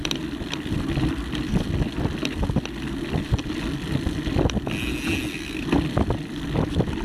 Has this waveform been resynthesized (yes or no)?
no